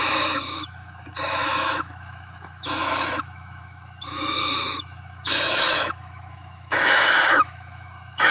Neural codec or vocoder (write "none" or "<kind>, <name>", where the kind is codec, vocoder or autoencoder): autoencoder, DAC-VAE